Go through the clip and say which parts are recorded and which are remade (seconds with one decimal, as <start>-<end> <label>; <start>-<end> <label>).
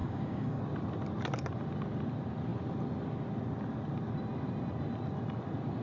0.0-0.6 remade; 0.6-5.8 recorded